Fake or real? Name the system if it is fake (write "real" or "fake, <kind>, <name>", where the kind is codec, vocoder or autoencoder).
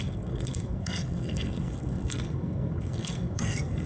fake, codec, SNAC